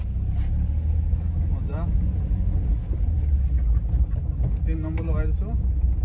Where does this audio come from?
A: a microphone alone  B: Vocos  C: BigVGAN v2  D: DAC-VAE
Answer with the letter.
A